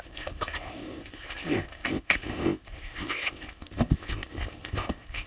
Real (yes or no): no